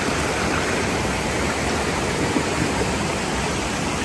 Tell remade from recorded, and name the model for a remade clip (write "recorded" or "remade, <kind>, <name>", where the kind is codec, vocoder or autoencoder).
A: recorded